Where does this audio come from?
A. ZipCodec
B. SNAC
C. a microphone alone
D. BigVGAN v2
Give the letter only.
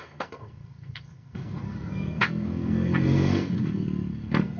B